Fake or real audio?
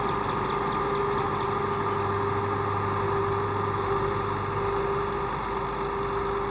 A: real